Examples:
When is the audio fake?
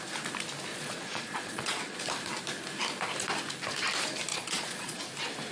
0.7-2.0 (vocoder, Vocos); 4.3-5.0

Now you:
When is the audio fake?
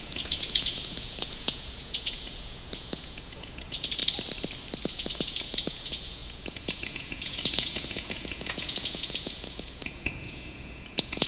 0.0-4.0 (vocoder, Vocos); 4.9-11.3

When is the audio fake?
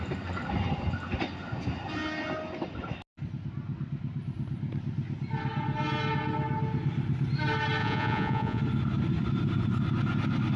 7.8-8.6 (vocoder, Vocos)